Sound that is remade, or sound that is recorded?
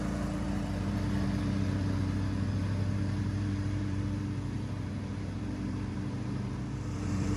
remade